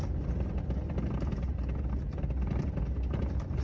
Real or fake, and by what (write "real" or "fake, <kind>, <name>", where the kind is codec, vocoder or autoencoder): real